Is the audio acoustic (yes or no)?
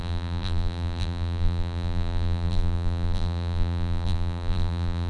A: no